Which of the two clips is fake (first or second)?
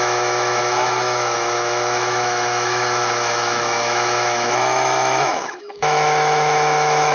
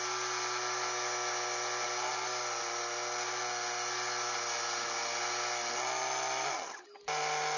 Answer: first